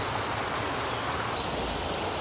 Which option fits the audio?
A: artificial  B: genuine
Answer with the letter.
B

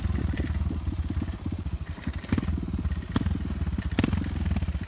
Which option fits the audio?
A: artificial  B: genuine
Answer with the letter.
B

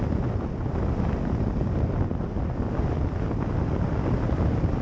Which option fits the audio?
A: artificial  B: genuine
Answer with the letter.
B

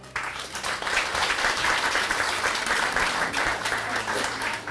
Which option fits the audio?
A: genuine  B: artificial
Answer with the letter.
B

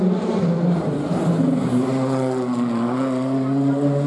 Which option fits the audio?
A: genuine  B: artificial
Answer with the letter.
A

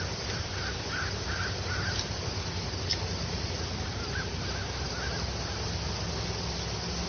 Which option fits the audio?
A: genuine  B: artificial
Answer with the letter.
A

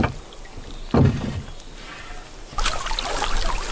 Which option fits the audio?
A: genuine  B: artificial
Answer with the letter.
A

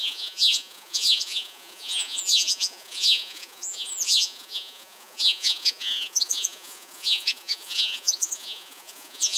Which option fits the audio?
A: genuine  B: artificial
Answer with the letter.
B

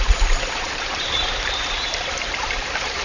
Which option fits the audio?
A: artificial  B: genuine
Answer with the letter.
A